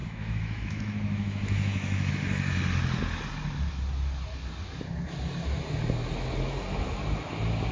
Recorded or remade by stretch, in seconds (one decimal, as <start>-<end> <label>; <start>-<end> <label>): 0.0-2.1 remade; 2.1-7.7 recorded